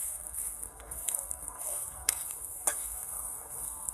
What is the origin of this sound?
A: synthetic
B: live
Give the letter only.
A